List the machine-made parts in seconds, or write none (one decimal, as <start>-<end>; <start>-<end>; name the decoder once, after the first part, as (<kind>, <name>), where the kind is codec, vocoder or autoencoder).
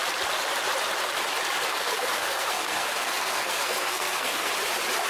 1.7-4.5 (codec, SNAC)